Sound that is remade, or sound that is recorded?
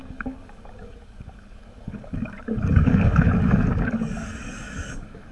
remade